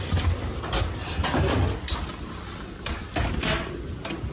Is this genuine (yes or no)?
yes